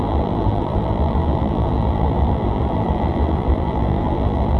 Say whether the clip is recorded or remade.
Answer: remade